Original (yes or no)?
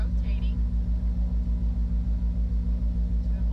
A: yes